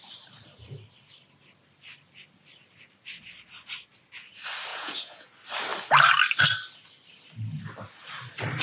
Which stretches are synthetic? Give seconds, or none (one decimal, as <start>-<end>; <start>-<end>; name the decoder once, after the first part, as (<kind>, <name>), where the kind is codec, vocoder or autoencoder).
4.7-5.3 (vocoder, Vocos)